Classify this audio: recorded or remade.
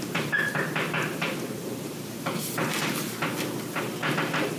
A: remade